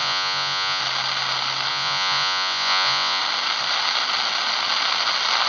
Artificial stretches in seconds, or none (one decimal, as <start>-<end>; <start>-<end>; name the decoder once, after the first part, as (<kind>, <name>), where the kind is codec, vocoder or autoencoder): 0.0-0.8 (vocoder, Vocos); 1.7-3.2